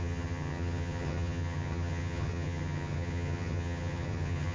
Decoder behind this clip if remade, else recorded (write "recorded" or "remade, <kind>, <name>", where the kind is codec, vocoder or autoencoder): remade, vocoder, HiFi-GAN